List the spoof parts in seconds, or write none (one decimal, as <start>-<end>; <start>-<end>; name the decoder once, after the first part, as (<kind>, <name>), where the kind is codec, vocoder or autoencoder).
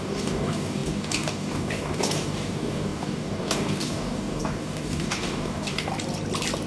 0.0-5.9 (codec, DAC)